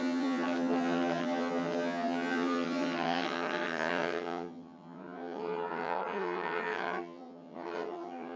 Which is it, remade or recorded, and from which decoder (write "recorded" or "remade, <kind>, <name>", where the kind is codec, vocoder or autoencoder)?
remade, vocoder, HiFi-GAN